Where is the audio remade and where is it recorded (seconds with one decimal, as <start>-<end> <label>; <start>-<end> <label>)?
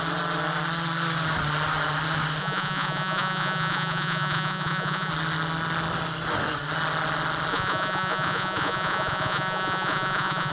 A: 0.0-2.4 recorded; 2.4-5.1 remade; 5.1-7.5 recorded; 7.5-10.5 remade